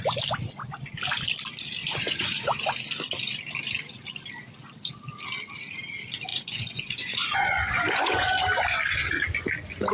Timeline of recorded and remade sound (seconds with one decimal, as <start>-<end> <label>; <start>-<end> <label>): 0.0-1.8 recorded; 1.8-2.7 remade; 2.7-6.3 recorded; 6.3-8.4 remade; 8.4-9.9 recorded